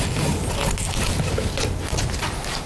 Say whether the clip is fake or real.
real